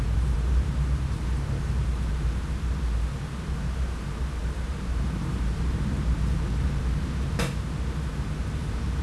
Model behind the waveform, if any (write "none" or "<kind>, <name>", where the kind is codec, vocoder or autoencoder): vocoder, BigVGAN v2